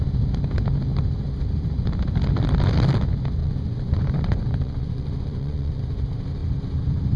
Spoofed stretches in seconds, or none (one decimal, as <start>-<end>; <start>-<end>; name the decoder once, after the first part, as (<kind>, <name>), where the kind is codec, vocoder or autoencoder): 3.4-5.8 (vocoder, Vocos)